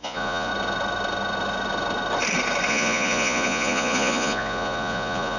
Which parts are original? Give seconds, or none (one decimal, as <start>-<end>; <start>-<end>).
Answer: 0.5-2.7